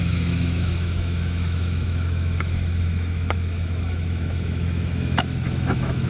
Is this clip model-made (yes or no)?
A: yes